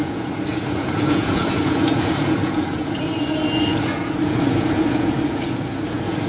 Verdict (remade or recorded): remade